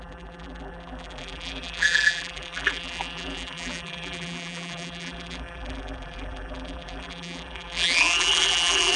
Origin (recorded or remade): remade